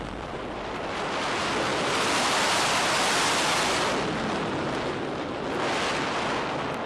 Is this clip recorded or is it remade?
recorded